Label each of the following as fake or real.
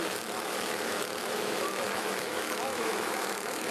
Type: fake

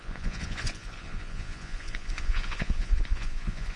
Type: fake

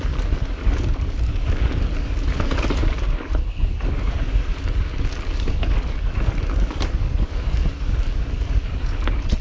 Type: fake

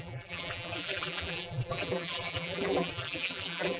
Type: fake